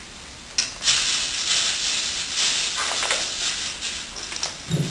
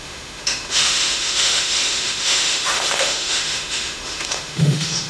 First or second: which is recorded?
first